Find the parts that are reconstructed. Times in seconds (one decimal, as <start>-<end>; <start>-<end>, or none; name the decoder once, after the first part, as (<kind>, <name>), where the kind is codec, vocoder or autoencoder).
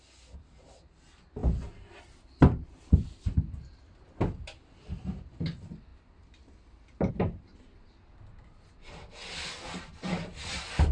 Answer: none